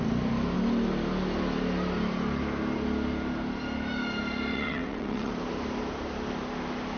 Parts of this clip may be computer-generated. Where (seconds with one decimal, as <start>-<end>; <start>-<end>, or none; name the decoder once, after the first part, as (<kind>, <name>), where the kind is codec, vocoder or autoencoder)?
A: 4.5-5.3 (vocoder, WaveNeXt)